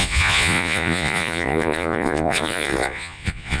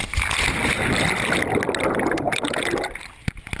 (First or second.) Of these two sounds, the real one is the second